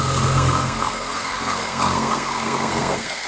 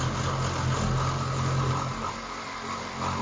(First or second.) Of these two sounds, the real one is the second